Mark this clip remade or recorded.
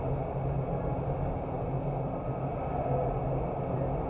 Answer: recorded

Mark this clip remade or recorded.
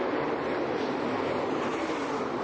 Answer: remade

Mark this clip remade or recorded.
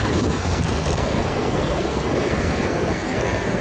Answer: remade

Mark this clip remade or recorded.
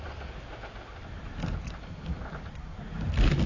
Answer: recorded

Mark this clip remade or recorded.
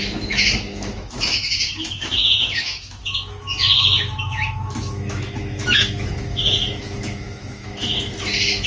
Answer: remade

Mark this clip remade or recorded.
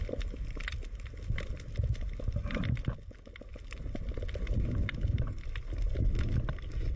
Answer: recorded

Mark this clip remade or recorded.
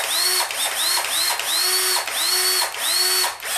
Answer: recorded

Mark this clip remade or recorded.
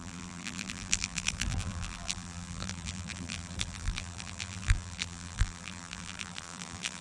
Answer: remade